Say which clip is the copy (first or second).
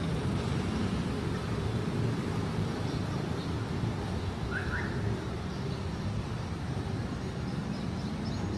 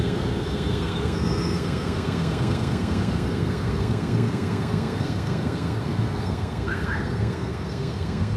second